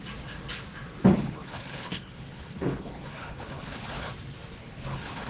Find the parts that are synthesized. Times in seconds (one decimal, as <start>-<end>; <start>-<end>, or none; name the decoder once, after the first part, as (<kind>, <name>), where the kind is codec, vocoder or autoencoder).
1.1-4.1 (codec, HILCodec); 4.6-5.3